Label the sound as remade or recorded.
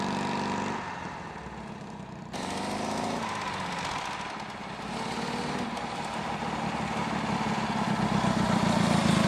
recorded